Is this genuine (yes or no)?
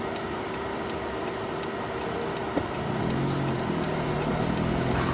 yes